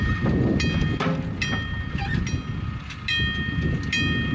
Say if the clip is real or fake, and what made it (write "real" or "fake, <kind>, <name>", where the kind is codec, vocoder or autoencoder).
real